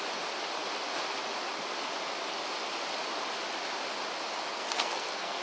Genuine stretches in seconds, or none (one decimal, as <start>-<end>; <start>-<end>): 0.0-4.5